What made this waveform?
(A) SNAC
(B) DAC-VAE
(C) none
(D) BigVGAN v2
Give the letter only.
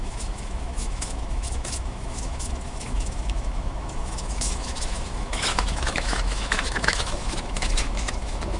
B